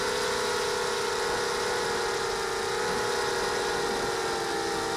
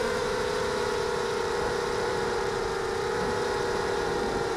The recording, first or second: first